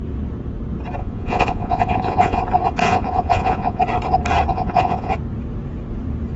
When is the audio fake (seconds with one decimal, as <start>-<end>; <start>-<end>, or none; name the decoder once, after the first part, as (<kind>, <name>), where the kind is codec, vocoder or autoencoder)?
1.0-2.4 (vocoder, Vocos); 2.8-3.8; 4.5-5.1